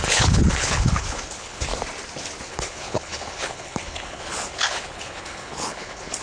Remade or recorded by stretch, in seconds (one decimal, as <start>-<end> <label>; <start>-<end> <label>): 0.0-1.7 remade; 1.7-2.5 recorded; 2.5-6.2 remade